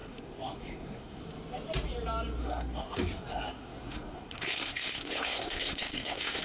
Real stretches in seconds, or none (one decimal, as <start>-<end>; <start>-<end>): 1.2-2.4